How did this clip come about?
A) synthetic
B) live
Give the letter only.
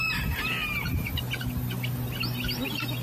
B